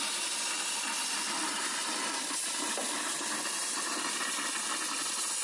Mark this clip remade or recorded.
recorded